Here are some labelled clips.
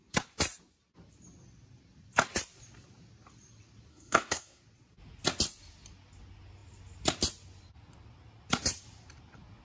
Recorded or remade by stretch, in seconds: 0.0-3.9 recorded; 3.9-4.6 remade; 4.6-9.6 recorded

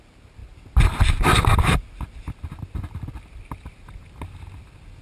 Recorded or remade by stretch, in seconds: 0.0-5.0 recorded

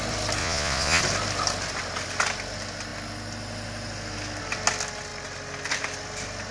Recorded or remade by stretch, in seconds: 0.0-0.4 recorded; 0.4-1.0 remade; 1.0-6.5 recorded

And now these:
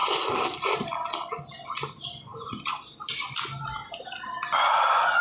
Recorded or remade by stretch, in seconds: 0.0-5.2 recorded

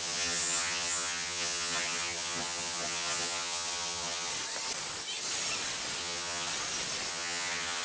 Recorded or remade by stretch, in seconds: 0.0-4.3 remade; 4.3-6.0 recorded; 6.0-6.5 remade; 6.5-7.1 recorded; 7.1-7.8 remade

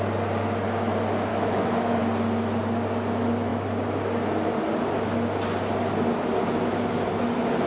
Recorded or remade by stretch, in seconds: 0.0-1.3 recorded; 1.3-2.0 remade; 2.0-7.7 recorded